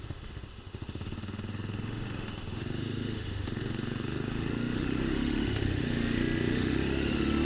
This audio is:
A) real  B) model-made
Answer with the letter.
B